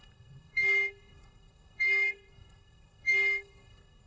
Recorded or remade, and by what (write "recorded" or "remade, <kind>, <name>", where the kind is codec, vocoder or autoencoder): remade, codec, SNAC